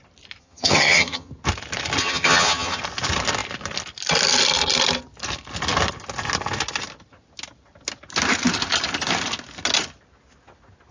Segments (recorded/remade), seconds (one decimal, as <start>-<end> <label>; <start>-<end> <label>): 0.0-0.4 recorded; 0.4-1.3 remade; 1.3-2.0 recorded; 2.0-2.8 remade; 2.8-10.9 recorded